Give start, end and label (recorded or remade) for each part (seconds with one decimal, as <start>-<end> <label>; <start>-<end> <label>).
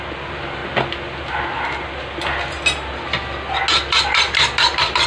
0.0-5.1 recorded